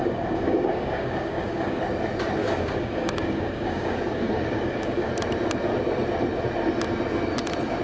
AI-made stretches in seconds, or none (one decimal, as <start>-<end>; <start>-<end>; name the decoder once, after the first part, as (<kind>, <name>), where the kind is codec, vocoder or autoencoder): 0.0-1.8 (codec, DAC); 2.4-5.1